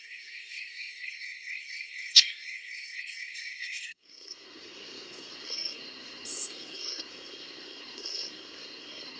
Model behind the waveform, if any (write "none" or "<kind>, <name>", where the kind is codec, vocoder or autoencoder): codec, SNAC